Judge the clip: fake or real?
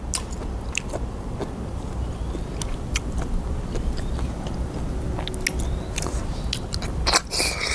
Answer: real